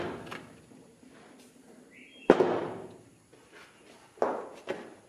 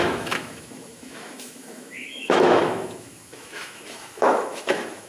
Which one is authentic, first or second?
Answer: first